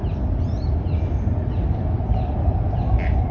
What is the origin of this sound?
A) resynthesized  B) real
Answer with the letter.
B